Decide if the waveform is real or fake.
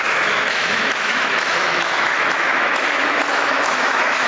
fake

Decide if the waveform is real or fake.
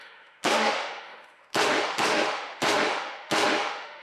fake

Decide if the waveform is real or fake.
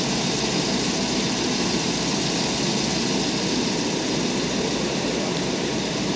real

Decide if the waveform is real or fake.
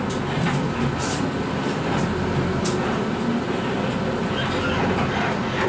real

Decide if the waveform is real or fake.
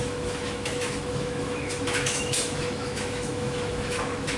fake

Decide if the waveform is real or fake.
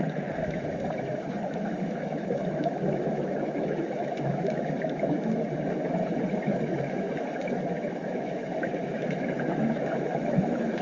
fake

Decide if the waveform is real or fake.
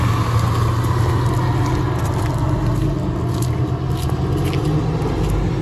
real